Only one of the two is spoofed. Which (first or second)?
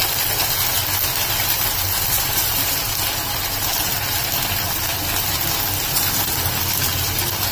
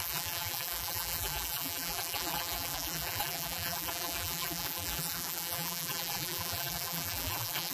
second